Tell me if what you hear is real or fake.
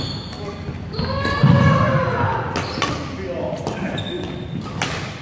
real